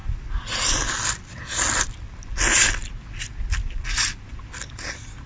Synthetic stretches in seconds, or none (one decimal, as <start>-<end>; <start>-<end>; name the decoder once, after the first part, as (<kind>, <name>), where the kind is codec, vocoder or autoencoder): none